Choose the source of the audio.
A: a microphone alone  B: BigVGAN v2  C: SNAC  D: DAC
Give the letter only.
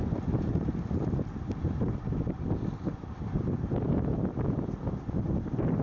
A